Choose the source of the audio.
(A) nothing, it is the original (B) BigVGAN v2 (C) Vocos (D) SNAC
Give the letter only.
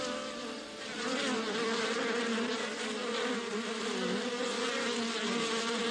A